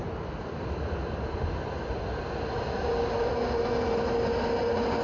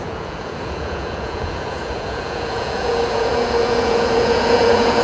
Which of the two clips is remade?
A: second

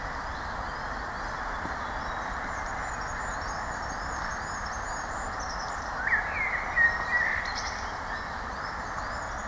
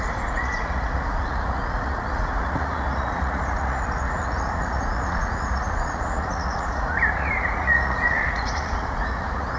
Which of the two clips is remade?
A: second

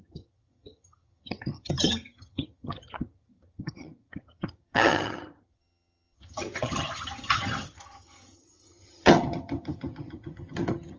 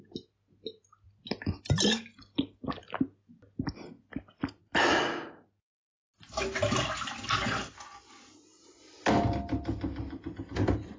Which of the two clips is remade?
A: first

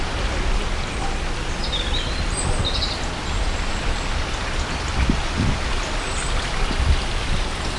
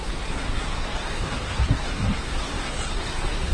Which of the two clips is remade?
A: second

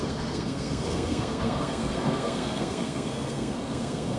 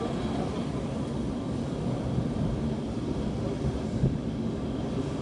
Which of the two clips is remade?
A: first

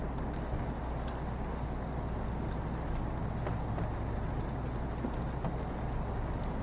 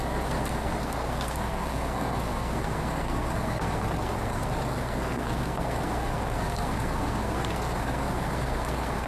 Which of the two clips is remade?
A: second